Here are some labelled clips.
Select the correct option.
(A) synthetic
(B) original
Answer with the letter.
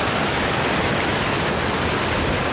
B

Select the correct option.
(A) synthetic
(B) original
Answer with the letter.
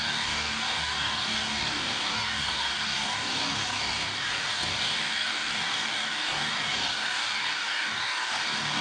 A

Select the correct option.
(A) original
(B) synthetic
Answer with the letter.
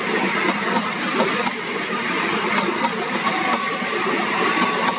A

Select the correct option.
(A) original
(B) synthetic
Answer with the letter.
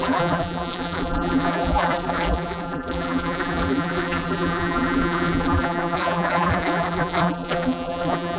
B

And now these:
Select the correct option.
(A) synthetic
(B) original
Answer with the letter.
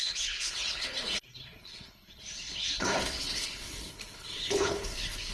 A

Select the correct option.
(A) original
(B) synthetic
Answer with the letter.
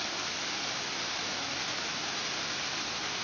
A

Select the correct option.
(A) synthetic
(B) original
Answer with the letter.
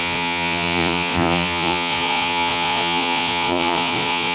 A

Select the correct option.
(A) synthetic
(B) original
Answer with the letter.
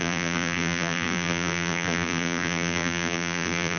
A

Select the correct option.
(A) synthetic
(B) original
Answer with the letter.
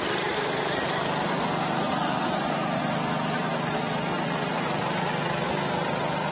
A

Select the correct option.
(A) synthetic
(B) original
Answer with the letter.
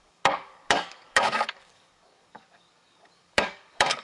A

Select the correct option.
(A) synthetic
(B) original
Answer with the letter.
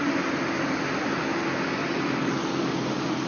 B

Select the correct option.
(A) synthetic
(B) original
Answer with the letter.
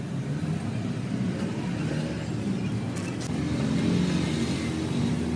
B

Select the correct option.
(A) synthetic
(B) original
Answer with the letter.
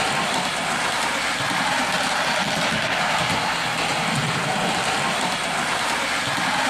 B